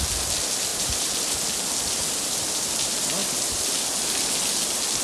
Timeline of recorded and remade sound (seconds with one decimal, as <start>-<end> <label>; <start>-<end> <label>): 0.0-0.7 recorded; 0.7-1.4 remade; 1.4-5.0 recorded